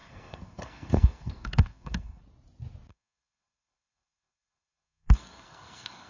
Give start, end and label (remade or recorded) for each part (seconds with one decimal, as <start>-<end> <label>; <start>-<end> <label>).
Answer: 0.0-2.2 remade; 2.2-2.9 recorded; 2.9-6.1 remade